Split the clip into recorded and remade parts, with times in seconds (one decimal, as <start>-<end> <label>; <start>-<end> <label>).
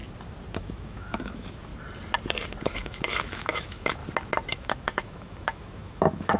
0.0-0.6 recorded; 0.6-1.7 remade; 1.7-2.6 recorded; 2.6-4.0 remade; 4.0-4.5 recorded; 4.5-6.4 remade